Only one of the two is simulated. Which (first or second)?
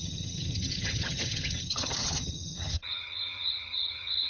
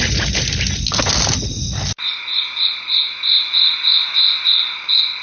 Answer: first